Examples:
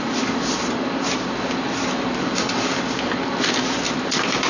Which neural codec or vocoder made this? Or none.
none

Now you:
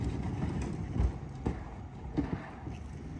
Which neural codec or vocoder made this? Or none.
none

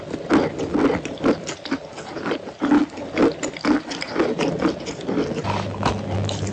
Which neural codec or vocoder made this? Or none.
none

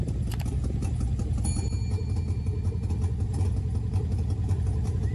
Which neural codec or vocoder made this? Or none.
vocoder, BigVGAN v2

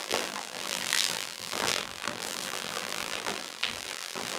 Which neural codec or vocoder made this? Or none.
vocoder, BigVGAN v2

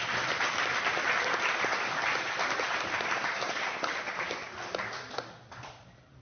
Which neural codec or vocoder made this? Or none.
none